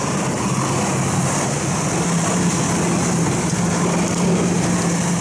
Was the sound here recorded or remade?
recorded